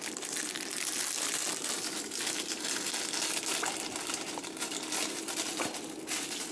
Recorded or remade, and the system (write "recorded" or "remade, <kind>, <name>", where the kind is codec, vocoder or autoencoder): recorded